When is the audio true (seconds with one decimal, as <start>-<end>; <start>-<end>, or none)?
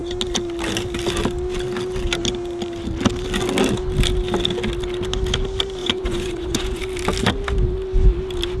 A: 0.0-5.8; 6.8-8.6